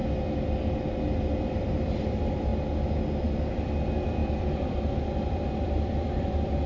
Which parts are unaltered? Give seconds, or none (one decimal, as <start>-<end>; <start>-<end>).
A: 0.0-1.2; 2.5-3.5